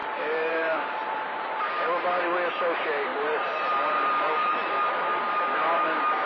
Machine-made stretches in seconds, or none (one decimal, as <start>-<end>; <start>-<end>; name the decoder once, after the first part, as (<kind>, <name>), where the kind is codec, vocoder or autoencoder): 0.0-1.7 (vocoder, BigVGAN v2); 3.1-4.7